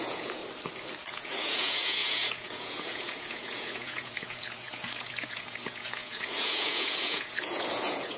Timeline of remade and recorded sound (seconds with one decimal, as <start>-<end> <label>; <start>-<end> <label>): 0.0-0.4 remade; 0.4-1.0 recorded; 1.0-8.2 remade